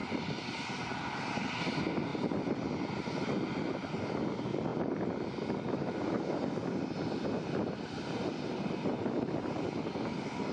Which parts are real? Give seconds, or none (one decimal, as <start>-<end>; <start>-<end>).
0.0-2.1; 3.0-10.5